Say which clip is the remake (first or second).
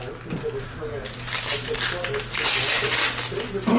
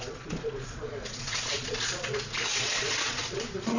second